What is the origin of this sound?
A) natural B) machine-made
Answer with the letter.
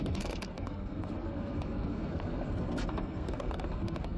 B